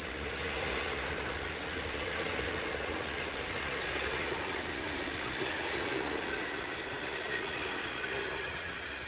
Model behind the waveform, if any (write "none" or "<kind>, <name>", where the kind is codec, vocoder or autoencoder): vocoder, Vocos